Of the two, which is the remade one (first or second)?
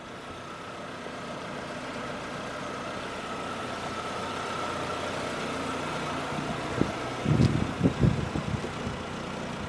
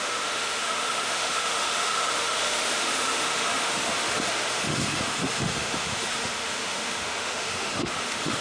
second